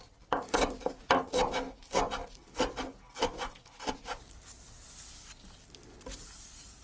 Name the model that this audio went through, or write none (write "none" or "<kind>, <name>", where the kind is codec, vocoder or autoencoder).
none